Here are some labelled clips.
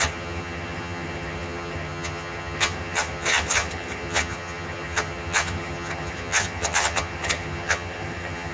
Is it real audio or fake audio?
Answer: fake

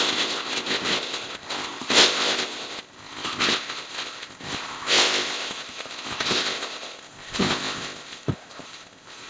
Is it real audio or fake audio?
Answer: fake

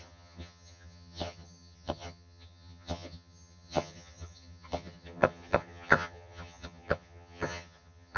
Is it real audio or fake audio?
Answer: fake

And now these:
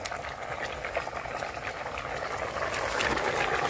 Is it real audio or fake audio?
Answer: real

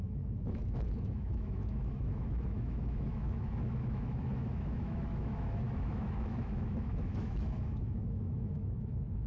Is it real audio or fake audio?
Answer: fake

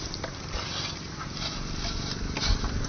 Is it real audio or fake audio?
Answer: real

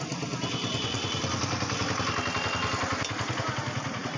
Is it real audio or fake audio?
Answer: real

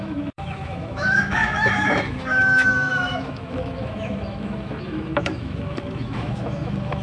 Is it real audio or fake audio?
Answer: fake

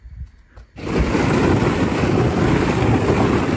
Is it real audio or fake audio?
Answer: real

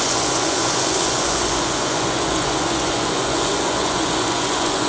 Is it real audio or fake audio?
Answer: fake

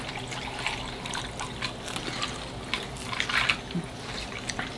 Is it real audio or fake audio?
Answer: real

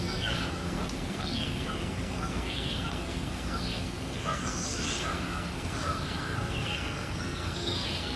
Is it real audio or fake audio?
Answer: fake